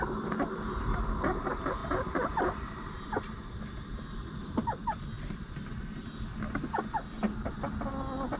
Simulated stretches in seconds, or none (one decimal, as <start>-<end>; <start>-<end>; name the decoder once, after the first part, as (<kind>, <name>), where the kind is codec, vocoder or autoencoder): none